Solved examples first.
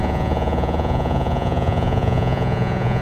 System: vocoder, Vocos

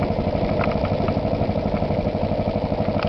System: none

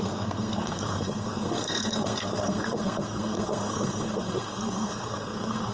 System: codec, SNAC